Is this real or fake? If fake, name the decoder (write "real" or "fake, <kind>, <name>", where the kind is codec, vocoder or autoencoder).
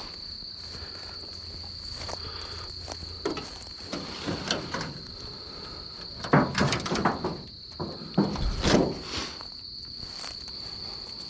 real